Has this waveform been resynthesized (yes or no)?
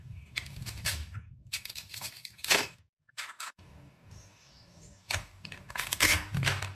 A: yes